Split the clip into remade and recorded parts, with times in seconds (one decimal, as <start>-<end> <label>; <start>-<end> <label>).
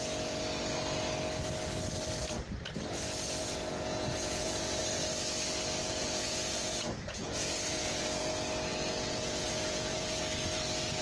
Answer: 0.0-3.4 recorded; 3.4-4.8 remade; 4.8-5.8 recorded; 5.8-8.2 remade; 8.2-8.7 recorded; 8.7-10.2 remade; 10.2-11.0 recorded